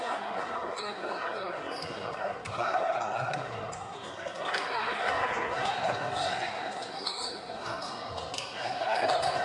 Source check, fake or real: fake